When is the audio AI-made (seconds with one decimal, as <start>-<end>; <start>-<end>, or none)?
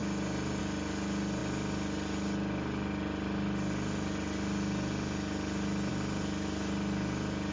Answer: none